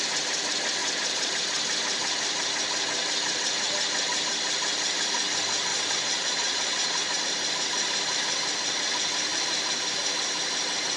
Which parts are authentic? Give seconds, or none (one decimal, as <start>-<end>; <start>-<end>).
0.0-0.8; 1.3-5.7; 7.2-11.0